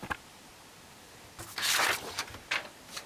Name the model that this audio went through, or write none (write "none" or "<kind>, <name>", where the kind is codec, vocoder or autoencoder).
none